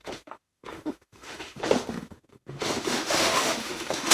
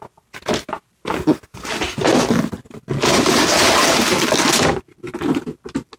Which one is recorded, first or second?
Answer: second